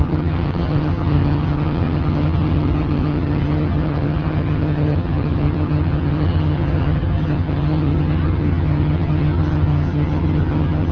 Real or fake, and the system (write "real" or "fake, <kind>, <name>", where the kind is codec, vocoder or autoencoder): fake, vocoder, HiFi-GAN